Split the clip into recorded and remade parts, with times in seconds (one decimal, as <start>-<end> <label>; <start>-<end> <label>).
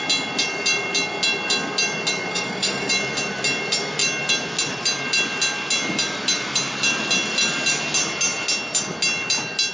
0.0-2.3 recorded; 2.3-2.9 remade; 2.9-9.7 recorded